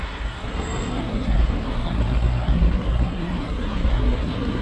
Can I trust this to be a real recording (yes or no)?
no